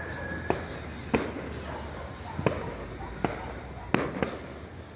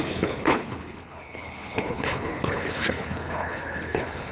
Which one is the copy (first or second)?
second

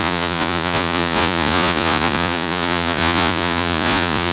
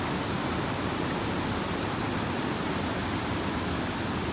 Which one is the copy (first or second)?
first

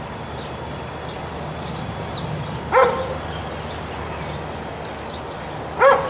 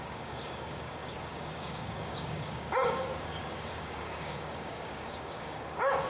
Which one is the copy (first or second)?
second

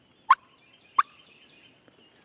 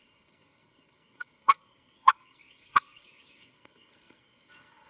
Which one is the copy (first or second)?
second